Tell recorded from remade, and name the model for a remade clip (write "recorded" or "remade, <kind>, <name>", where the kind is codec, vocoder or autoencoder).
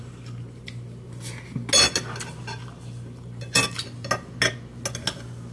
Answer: recorded